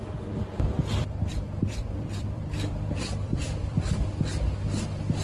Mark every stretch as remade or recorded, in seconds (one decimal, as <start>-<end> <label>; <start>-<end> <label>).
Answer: 0.0-0.8 recorded; 0.8-3.9 remade; 3.9-5.2 recorded